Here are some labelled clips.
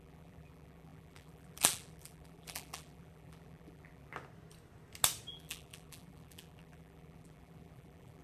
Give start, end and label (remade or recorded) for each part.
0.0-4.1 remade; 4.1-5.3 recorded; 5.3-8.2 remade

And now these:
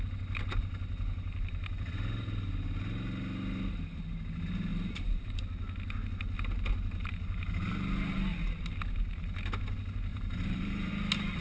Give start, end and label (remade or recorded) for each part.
0.0-4.7 recorded; 4.7-5.4 remade; 5.4-10.1 recorded; 10.1-10.9 remade; 10.9-11.4 recorded

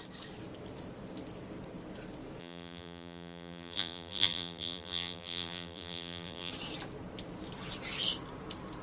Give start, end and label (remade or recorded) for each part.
0.0-2.4 recorded; 2.4-6.5 remade; 6.5-8.8 recorded

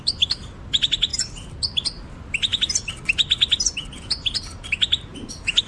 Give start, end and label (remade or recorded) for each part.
0.0-5.7 recorded

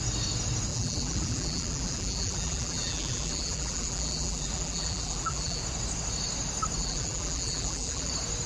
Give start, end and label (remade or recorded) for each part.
0.0-0.7 recorded; 0.7-5.6 remade; 5.6-6.8 recorded; 6.8-8.1 remade; 8.1-8.5 recorded

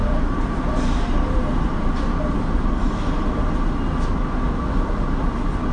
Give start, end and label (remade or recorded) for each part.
0.0-3.4 remade; 3.4-5.7 recorded